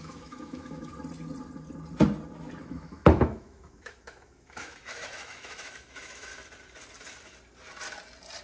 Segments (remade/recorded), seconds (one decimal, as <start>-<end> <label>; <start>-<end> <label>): 0.0-0.9 remade; 0.9-2.6 recorded; 2.6-6.3 remade; 6.3-8.4 recorded